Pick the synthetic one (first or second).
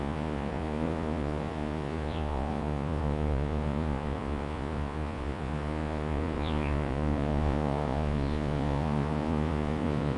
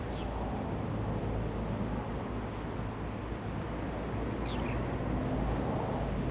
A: first